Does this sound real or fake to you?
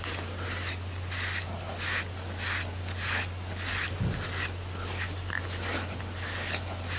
real